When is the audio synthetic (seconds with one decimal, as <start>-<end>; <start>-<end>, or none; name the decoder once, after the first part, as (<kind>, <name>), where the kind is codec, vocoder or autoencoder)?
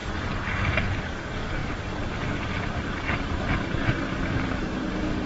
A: 1.0-1.6 (codec, DAC); 4.6-5.3